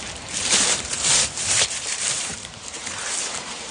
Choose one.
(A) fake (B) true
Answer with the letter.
A